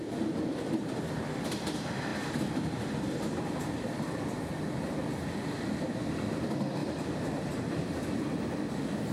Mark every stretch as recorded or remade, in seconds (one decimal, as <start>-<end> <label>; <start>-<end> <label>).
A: 0.0-6.8 recorded; 6.8-8.1 remade; 8.1-9.1 recorded